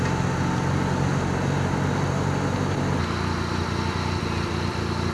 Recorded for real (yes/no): yes